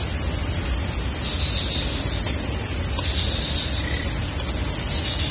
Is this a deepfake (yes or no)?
no